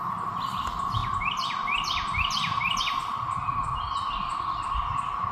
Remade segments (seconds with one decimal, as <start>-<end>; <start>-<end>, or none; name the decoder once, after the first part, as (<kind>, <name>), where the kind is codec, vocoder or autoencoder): none